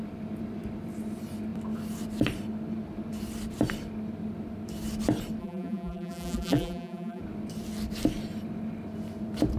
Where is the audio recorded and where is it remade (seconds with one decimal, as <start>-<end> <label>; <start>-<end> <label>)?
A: 0.0-5.4 recorded; 5.4-7.2 remade; 7.2-9.6 recorded